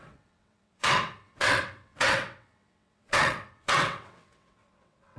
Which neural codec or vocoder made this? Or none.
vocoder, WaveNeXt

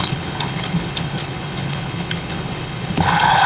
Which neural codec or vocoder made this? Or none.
codec, HILCodec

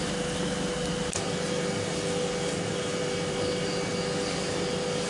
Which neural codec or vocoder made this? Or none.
none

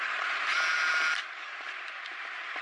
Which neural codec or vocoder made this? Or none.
vocoder, BigVGAN v2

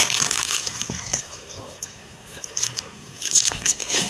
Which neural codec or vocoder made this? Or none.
codec, SNAC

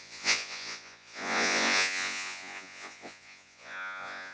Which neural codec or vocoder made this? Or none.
vocoder, Vocos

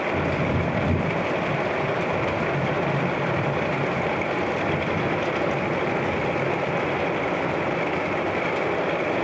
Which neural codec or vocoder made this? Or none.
none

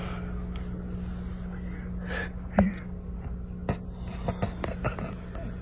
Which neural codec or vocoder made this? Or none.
none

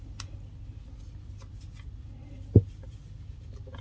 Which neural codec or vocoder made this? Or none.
none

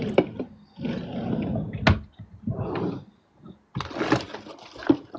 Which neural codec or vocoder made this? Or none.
none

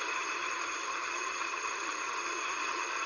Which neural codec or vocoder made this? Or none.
vocoder, HiFi-GAN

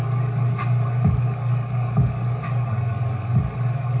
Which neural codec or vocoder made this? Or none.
codec, DAC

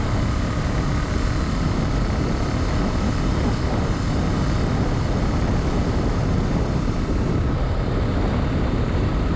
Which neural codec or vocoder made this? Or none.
none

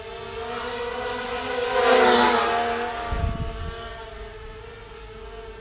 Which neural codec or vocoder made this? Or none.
none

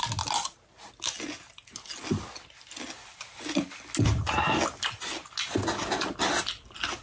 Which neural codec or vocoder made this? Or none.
none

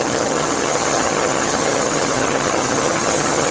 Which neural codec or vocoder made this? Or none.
vocoder, HiFi-GAN